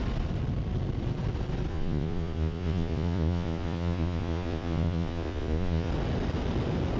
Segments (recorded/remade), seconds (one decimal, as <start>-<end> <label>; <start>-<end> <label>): 0.0-1.7 recorded; 1.7-5.9 remade; 5.9-7.0 recorded